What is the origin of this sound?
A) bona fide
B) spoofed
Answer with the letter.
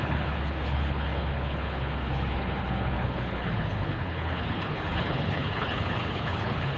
B